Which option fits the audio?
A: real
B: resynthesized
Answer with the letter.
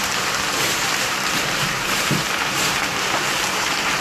B